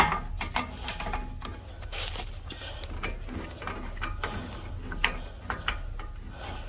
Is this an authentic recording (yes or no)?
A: yes